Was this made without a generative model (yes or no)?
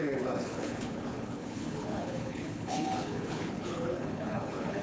no